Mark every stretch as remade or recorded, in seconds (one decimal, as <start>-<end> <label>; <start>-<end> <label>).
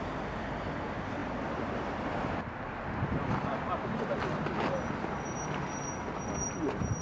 0.0-7.0 recorded